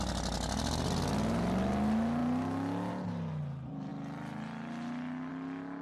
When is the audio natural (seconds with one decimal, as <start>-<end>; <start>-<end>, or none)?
0.0-5.8